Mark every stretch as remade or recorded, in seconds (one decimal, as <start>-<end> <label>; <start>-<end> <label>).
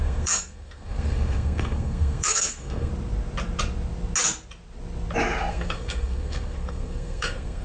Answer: 0.0-2.9 remade; 2.9-5.5 recorded; 5.5-7.6 remade